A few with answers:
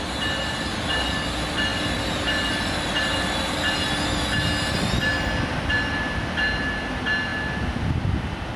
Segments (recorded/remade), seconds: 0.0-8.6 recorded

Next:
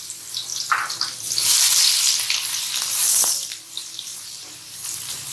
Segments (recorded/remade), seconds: 0.0-0.5 remade; 0.5-2.9 recorded; 2.9-5.3 remade